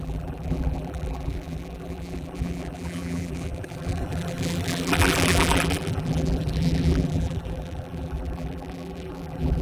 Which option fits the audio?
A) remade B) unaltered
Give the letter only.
A